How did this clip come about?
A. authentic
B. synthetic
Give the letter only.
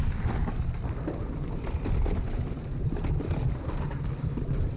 A